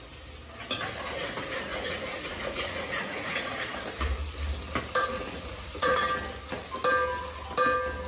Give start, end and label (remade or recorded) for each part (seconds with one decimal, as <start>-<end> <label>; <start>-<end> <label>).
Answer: 0.0-1.7 recorded; 1.7-3.5 remade; 3.5-5.1 recorded; 5.1-6.0 remade; 6.0-8.1 recorded